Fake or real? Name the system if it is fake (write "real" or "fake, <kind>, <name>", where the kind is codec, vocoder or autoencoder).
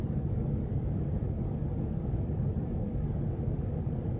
fake, codec, DAC